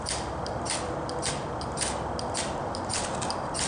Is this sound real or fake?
real